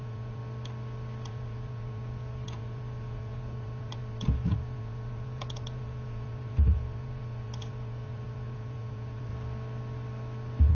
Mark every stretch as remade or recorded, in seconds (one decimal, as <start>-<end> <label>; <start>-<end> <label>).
0.0-0.4 remade; 0.4-1.3 recorded; 1.3-9.3 remade; 9.3-10.7 recorded